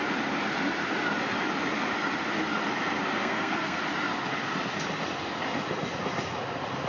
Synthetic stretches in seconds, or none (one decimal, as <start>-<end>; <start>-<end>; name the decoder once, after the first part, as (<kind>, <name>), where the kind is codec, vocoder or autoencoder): 3.1-3.8 (codec, SNAC)